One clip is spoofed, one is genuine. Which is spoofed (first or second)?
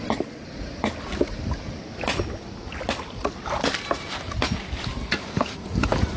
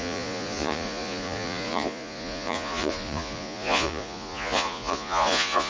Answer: second